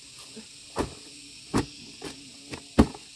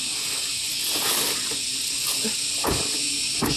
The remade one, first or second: first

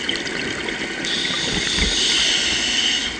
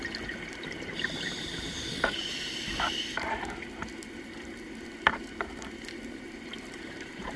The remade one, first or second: second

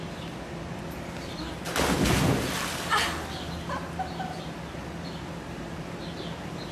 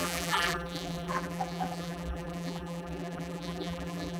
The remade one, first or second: second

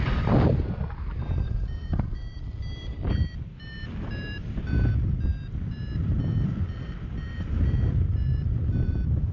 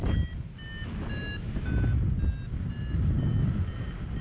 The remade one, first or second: first